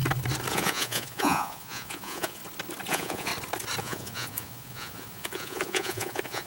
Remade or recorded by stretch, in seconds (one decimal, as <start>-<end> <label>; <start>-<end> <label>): 0.0-0.5 recorded; 0.5-2.4 remade; 2.4-2.9 recorded; 2.9-3.3 remade; 3.3-3.8 recorded; 3.8-6.5 remade